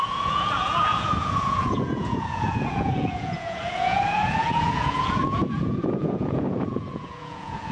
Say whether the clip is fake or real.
fake